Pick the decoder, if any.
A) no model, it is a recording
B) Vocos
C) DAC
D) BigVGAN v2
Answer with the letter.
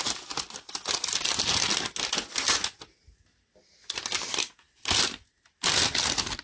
A